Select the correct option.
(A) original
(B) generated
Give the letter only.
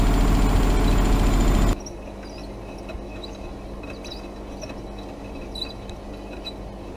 A